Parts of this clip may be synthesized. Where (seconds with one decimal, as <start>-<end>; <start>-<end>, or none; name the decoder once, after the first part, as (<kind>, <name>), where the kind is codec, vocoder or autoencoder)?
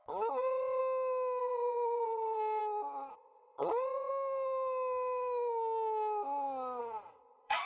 0.0-0.8 (vocoder, WaveNeXt); 1.4-2.6; 3.1-4.1; 6.8-7.7